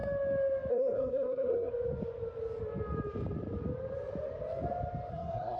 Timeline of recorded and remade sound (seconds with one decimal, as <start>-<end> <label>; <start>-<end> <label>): 0.0-0.7 recorded; 0.7-1.7 remade; 1.7-5.1 recorded; 5.1-5.6 remade

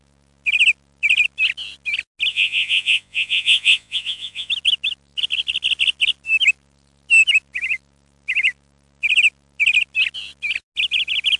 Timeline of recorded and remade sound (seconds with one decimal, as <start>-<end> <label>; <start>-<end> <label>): 0.0-2.3 recorded; 2.3-4.5 remade; 4.5-11.4 recorded

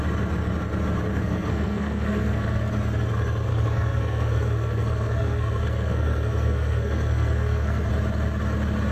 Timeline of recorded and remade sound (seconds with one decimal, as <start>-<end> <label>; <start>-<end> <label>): 0.0-1.1 recorded; 1.1-2.7 remade; 2.7-3.5 recorded; 3.5-7.9 remade; 7.9-8.9 recorded

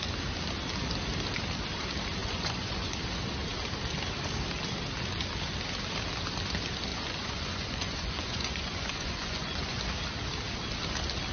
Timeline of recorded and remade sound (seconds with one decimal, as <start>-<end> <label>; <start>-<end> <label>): 0.0-2.2 recorded; 2.2-2.9 remade; 2.9-6.9 recorded; 6.9-9.8 remade; 9.8-11.3 recorded

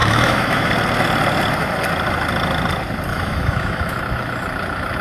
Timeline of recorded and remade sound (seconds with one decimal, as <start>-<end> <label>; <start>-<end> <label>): 0.0-0.7 remade; 0.7-3.1 recorded; 3.1-4.0 remade; 4.0-5.0 recorded

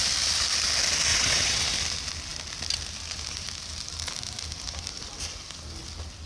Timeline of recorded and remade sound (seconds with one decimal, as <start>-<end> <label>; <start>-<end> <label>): 0.0-1.1 recorded; 1.1-1.6 remade; 1.6-6.3 recorded